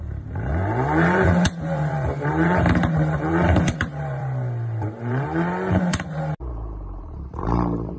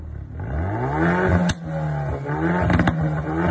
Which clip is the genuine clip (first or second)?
second